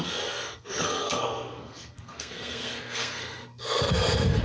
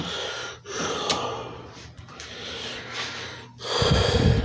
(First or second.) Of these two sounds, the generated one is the first